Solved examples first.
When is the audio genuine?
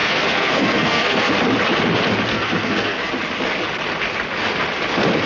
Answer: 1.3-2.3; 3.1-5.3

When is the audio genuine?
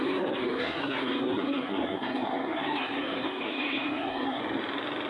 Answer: 4.4-5.1